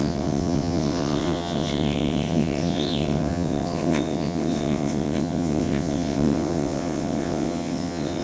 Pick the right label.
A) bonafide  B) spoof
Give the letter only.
B